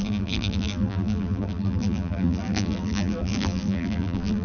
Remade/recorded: remade